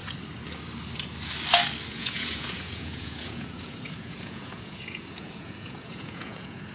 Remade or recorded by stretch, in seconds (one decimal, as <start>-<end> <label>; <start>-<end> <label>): 0.0-1.9 recorded; 1.9-6.7 remade